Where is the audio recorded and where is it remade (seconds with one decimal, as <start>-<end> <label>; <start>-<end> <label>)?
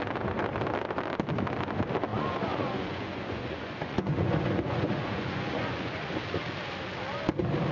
0.0-2.1 recorded; 2.1-6.2 remade; 6.2-7.7 recorded